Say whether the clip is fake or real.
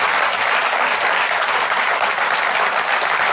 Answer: real